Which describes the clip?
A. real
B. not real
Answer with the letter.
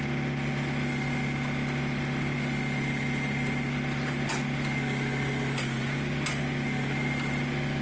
A